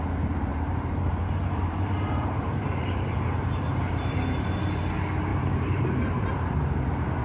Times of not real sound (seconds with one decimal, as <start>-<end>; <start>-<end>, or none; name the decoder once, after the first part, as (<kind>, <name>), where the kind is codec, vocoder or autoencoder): 0.5-4.8 (vocoder, BigVGAN v2); 5.3-6.7